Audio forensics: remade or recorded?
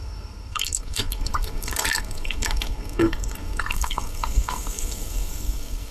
remade